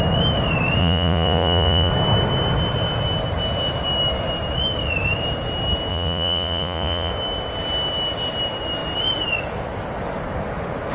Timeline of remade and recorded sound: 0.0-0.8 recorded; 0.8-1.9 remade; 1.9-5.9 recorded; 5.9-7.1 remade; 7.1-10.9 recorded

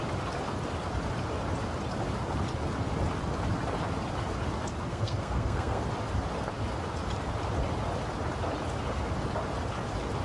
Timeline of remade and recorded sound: 0.0-4.9 recorded; 4.9-5.8 remade; 5.8-10.2 recorded

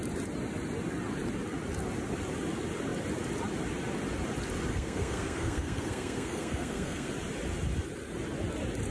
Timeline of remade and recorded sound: 0.0-4.7 recorded; 4.7-7.1 remade; 7.1-8.9 recorded